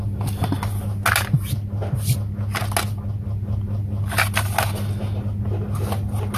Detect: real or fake real